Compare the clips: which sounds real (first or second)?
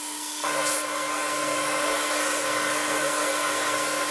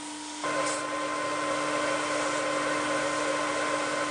second